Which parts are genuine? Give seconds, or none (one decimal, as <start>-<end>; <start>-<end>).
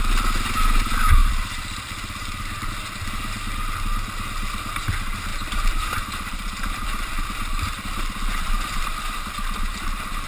0.0-1.2; 2.7-5.3; 7.6-10.3